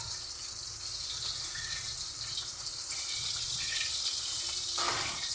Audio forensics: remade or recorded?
recorded